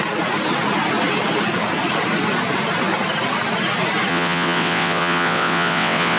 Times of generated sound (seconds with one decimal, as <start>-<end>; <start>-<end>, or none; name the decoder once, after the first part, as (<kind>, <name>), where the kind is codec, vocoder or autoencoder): 4.1-6.2 (vocoder, WaveNeXt)